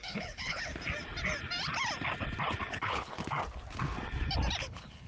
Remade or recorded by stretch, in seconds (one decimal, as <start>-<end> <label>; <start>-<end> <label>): 0.0-0.7 remade; 0.7-2.7 recorded; 2.7-3.2 remade; 3.2-4.6 recorded; 4.6-5.1 remade